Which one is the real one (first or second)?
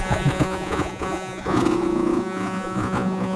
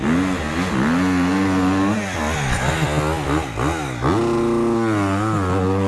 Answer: second